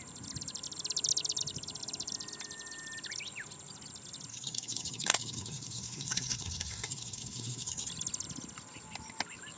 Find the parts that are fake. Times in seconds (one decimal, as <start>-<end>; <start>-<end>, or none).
4.3-7.9